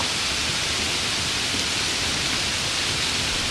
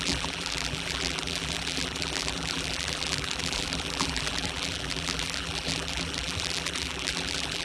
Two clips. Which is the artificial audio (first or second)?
second